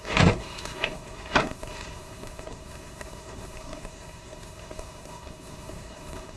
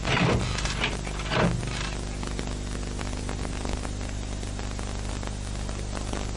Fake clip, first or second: first